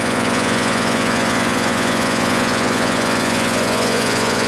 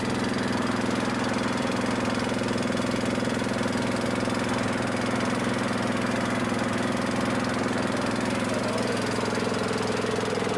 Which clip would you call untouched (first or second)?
second